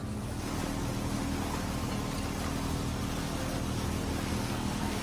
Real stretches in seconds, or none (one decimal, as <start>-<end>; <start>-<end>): 0.0-4.3